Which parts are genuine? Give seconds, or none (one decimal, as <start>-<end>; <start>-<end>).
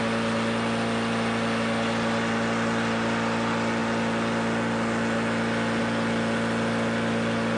0.0-7.6